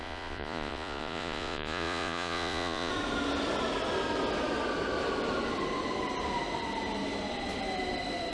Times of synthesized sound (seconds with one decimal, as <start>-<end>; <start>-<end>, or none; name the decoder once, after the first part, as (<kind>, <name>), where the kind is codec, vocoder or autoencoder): 0.0-2.9 (vocoder, Vocos)